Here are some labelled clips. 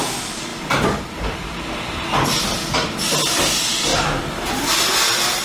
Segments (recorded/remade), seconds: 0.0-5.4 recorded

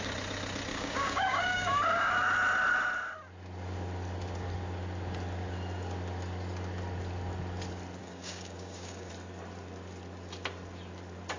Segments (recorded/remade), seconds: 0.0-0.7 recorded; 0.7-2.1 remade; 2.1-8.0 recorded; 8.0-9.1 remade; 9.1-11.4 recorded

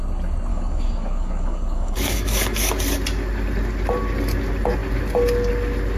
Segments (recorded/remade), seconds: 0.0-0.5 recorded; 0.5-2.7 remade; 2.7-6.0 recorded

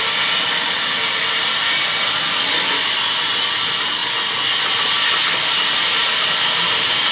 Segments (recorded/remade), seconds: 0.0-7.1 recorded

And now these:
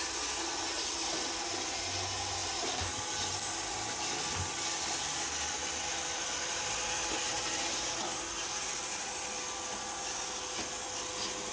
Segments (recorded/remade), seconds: 0.0-11.5 recorded

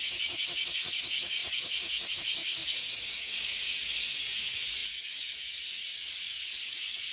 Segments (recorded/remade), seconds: 0.0-7.1 remade

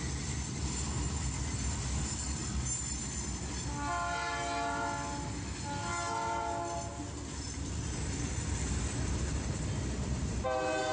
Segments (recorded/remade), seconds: 0.0-10.9 recorded